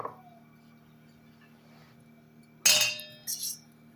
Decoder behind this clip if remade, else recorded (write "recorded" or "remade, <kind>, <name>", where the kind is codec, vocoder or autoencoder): recorded